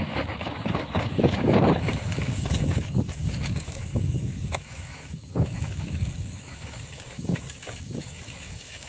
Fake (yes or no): yes